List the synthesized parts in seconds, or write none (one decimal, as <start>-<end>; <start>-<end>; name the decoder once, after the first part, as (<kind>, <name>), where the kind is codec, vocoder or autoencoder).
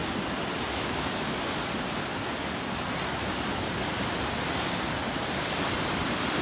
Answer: none